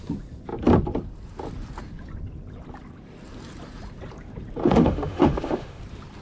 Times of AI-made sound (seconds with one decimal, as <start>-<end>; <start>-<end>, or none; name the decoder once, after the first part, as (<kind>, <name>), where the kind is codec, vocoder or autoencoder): 4.6-5.8 (autoencoder, DAC-VAE)